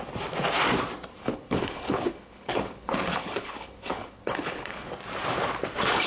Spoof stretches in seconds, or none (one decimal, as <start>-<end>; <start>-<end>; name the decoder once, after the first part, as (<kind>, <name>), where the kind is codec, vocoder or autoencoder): 1.2-4.9 (codec, HILCodec)